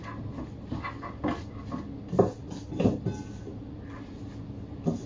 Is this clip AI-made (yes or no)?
no